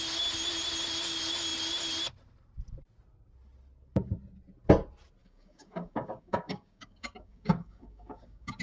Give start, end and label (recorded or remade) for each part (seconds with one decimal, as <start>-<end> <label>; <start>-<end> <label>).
0.0-5.2 recorded; 5.2-8.6 remade